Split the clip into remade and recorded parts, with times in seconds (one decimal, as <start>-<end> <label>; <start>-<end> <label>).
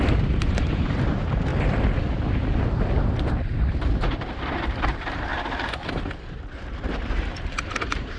0.0-1.5 remade; 1.5-2.6 recorded; 2.6-5.3 remade; 5.3-6.8 recorded; 6.8-8.2 remade